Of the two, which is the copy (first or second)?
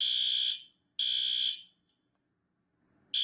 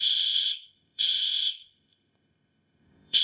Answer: second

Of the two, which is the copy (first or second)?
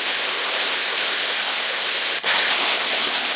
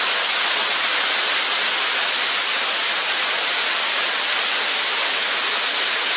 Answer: first